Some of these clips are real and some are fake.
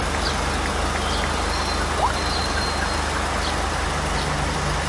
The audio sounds real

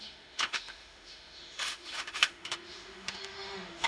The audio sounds fake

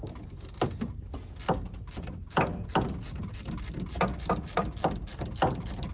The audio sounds real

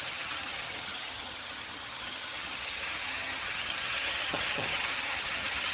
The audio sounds fake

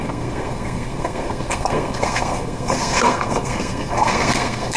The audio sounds fake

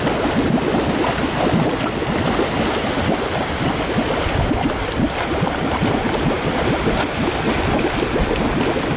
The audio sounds real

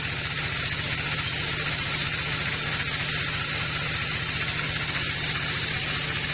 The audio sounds real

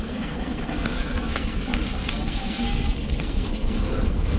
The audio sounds fake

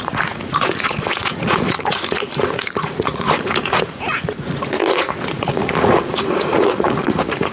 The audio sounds fake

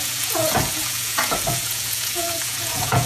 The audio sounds fake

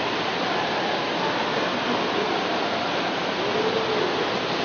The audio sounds real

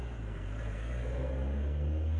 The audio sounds fake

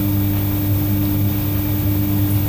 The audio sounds real